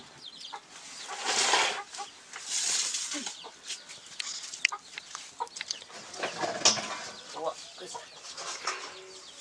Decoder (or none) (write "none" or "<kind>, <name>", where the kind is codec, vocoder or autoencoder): none